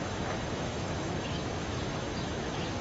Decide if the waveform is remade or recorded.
remade